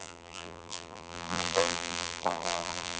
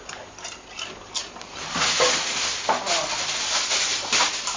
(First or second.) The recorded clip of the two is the second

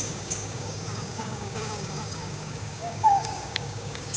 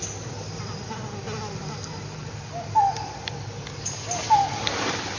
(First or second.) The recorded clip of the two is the second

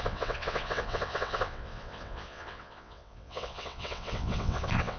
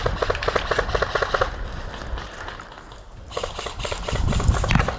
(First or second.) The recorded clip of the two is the second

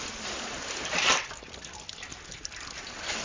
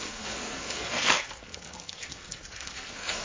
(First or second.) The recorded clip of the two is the first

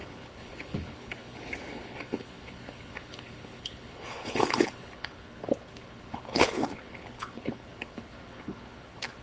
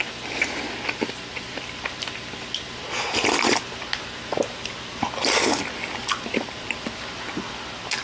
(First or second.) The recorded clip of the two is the second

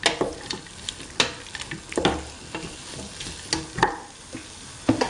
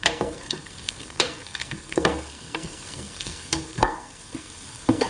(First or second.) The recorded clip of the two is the first